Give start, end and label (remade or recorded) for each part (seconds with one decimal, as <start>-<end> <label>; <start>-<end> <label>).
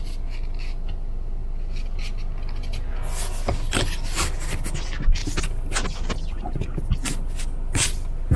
0.0-8.4 recorded